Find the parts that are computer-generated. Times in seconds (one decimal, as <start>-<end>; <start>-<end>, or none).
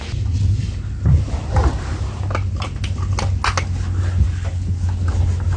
none